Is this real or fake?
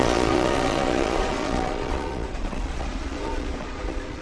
fake